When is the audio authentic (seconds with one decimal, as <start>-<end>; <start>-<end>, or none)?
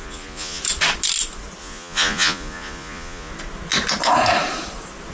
0.6-1.6; 3.3-5.1